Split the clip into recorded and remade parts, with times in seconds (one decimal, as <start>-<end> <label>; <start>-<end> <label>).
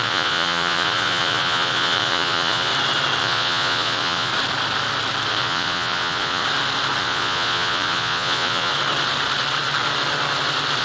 0.0-2.7 remade; 2.7-3.2 recorded; 3.2-4.3 remade; 4.3-5.3 recorded; 5.3-6.4 remade; 6.4-7.0 recorded; 7.0-8.7 remade; 8.7-10.8 recorded